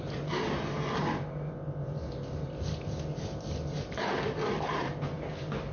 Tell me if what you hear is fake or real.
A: real